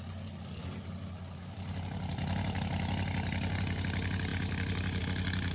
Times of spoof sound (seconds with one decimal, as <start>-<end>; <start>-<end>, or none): none